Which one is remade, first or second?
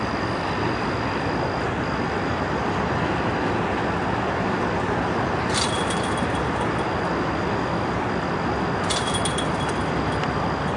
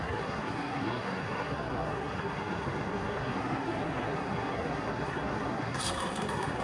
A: second